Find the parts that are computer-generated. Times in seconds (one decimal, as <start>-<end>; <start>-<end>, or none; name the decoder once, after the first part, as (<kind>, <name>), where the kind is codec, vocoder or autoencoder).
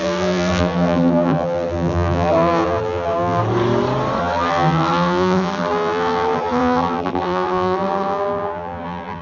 0.0-3.4 (vocoder, BigVGAN v2); 4.2-9.2